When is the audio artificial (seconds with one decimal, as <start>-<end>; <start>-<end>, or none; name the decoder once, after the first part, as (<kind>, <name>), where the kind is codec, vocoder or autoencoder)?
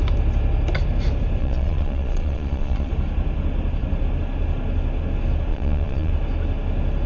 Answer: 1.4-2.9 (vocoder, Vocos); 5.5-6.1